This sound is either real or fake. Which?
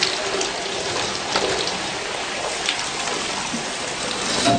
real